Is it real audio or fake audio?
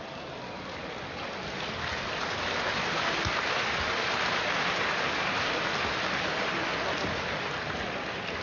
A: real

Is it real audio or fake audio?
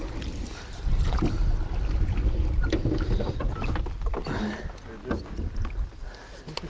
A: real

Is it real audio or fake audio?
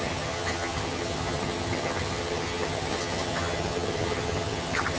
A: fake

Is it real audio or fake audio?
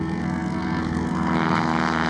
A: fake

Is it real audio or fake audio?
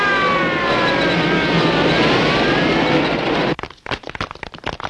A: real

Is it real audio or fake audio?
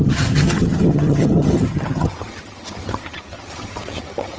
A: fake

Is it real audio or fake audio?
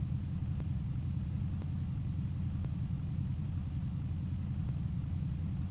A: real